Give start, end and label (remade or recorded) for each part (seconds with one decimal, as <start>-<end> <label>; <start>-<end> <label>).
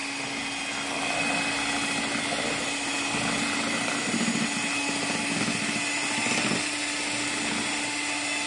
0.0-8.5 recorded